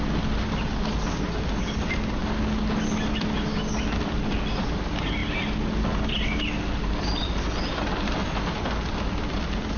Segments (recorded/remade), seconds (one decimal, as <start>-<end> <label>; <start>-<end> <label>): 0.0-9.8 recorded

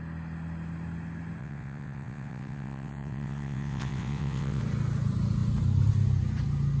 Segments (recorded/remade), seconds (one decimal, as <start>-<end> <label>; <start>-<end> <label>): 0.0-1.4 recorded; 1.4-4.6 remade; 4.6-6.8 recorded

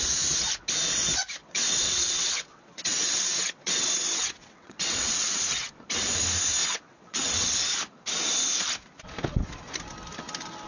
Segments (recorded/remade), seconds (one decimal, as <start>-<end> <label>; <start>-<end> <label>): 0.0-1.4 recorded; 1.4-5.4 remade; 5.4-6.6 recorded; 6.6-7.6 remade; 7.6-10.7 recorded

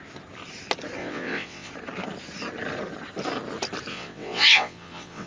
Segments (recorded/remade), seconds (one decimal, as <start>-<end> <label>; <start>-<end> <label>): 0.0-1.0 recorded; 1.0-1.7 remade; 1.7-3.9 recorded; 3.9-5.3 remade

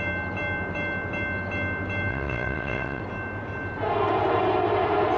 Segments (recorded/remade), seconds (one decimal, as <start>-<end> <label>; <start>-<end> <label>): 0.0-2.1 recorded; 2.1-3.0 remade; 3.0-5.2 recorded

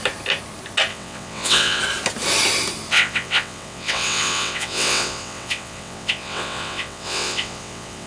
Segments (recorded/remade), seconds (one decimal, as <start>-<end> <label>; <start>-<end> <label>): 0.0-0.9 recorded; 0.9-1.8 remade; 1.8-2.9 recorded; 2.9-8.1 remade

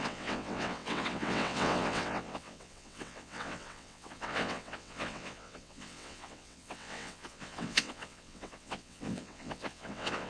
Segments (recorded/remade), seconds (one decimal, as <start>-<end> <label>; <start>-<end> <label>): 0.0-10.3 remade